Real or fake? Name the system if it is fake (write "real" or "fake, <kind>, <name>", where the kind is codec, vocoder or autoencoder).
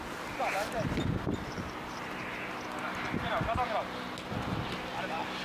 real